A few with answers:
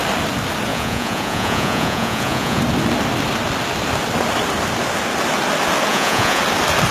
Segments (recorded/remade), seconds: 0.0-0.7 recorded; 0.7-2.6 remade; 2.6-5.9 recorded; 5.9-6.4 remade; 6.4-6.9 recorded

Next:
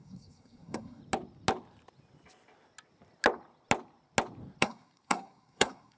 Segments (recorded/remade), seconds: 0.0-1.0 remade; 1.0-4.6 recorded; 4.6-6.0 remade

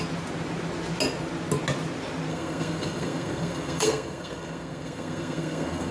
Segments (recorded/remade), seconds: 0.0-2.3 recorded; 2.3-5.9 remade